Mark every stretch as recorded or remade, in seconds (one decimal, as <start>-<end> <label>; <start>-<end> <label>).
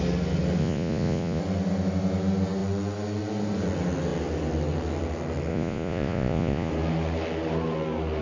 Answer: 0.0-0.6 recorded; 0.6-1.4 remade; 1.4-5.5 recorded; 5.5-6.7 remade; 6.7-8.2 recorded